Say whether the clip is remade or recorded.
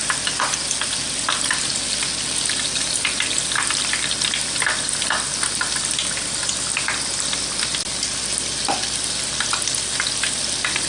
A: recorded